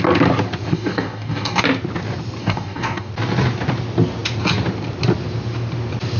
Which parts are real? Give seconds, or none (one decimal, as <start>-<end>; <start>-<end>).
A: 0.0-0.7; 1.6-2.4; 3.1-6.2